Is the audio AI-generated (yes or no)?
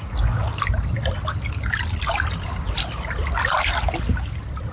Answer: no